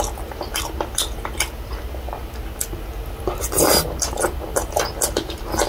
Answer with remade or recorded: recorded